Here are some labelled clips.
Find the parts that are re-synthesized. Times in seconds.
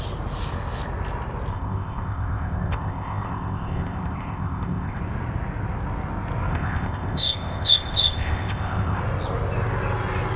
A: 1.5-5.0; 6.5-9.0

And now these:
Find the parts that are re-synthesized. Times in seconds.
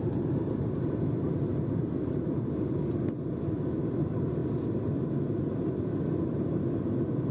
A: none